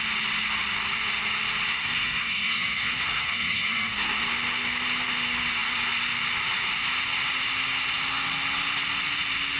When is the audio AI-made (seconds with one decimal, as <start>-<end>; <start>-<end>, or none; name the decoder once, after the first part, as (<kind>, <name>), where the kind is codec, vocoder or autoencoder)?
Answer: 1.7-4.2 (codec, SNAC)